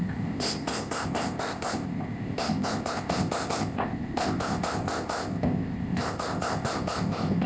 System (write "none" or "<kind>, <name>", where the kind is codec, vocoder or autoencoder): codec, ZipCodec